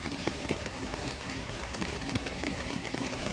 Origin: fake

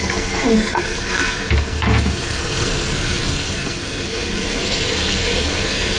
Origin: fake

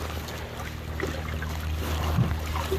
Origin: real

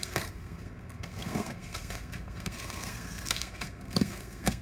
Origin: fake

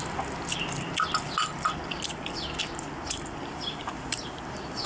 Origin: real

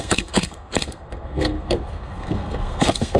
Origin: fake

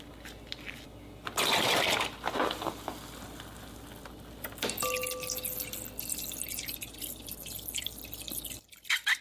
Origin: real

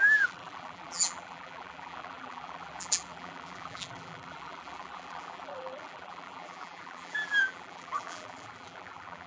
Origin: fake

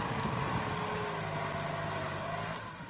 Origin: real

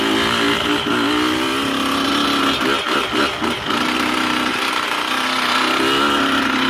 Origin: real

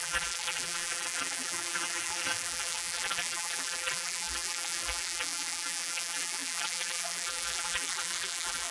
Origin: fake